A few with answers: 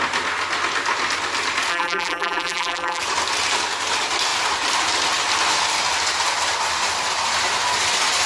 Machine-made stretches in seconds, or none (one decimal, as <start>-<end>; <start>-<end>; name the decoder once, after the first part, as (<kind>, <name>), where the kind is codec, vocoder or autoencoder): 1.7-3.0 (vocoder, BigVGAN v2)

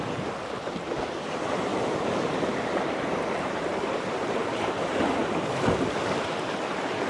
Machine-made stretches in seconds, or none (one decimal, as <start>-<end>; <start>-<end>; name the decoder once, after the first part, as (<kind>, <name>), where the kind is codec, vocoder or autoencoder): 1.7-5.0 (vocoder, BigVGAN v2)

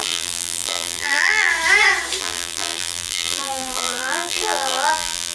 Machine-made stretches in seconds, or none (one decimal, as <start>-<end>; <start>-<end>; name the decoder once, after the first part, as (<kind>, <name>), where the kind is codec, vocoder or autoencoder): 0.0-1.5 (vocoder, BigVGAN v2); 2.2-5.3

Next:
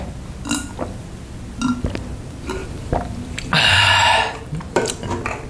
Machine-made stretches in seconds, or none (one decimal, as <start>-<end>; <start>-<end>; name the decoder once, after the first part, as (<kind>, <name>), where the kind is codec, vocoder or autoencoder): 2.6-4.9 (vocoder, BigVGAN v2)

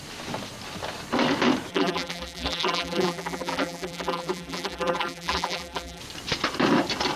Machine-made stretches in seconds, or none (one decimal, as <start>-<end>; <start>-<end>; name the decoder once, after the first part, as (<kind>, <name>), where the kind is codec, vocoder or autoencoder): 1.7-6.0 (vocoder, BigVGAN v2)

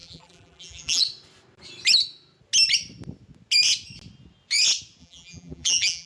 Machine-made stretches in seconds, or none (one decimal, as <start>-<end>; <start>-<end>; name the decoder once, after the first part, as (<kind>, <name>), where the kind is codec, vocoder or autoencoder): 0.0-1.0 (vocoder, BigVGAN v2); 5.0-6.1